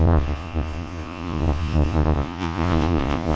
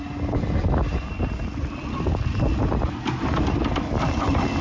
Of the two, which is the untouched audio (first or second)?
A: second